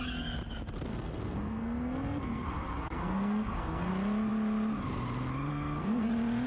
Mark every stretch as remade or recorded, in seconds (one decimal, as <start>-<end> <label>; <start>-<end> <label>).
0.0-0.9 recorded; 0.9-3.9 remade; 3.9-5.5 recorded; 5.5-6.1 remade; 6.1-6.5 recorded